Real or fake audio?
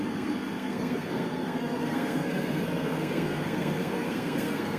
fake